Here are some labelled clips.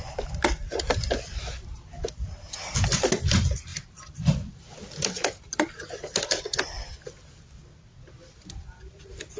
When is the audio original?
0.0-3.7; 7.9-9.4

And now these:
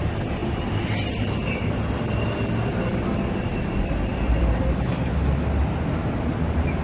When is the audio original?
0.0-4.1; 4.6-6.8

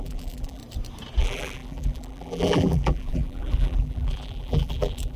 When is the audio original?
0.6-1.2

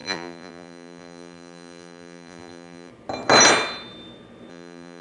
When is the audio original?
2.9-4.5

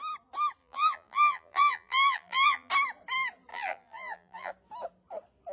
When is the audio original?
0.0-0.6; 2.7-3.5; 4.5-5.5

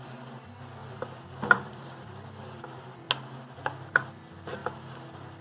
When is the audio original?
0.0-0.8; 3.1-4.6

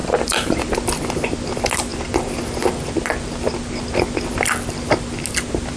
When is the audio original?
0.7-5.8